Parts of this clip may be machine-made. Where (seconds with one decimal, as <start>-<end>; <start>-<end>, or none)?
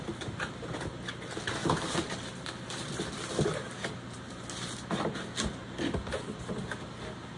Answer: 1.6-2.5